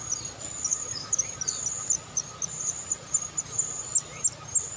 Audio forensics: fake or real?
real